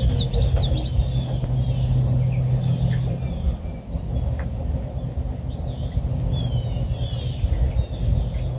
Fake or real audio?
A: real